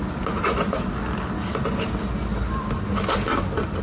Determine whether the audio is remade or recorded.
recorded